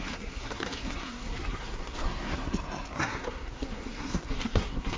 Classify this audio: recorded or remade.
remade